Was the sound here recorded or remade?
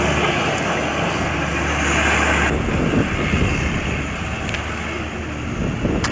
recorded